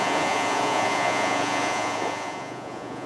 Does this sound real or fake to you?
fake